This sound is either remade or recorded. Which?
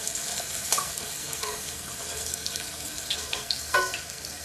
remade